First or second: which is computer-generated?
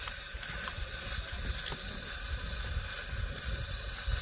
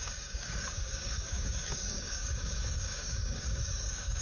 second